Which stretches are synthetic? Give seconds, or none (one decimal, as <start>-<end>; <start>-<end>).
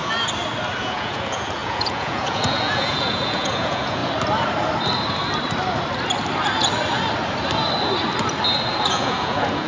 0.8-4.0; 8.7-9.7